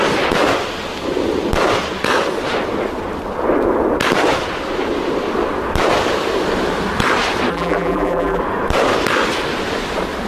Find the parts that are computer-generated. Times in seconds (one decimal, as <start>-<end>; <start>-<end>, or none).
7.5-8.4